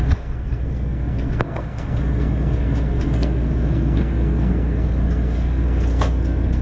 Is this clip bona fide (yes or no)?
no